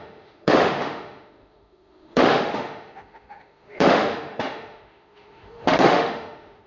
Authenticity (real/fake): fake